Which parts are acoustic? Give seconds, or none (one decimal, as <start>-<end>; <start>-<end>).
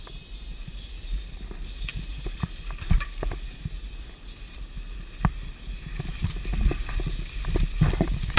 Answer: 0.0-8.4